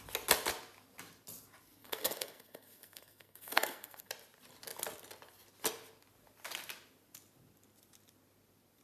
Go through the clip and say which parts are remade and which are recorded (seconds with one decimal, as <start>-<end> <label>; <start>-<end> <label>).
0.0-1.8 recorded; 1.8-4.1 remade; 4.1-8.8 recorded